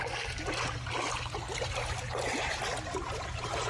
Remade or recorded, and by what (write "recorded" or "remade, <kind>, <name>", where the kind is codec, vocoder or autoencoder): recorded